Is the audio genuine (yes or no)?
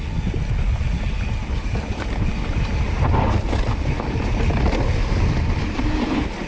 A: yes